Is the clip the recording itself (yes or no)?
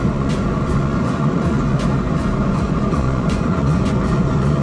no